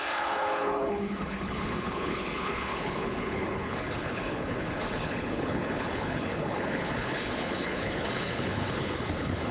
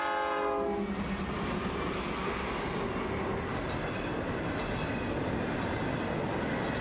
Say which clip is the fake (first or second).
first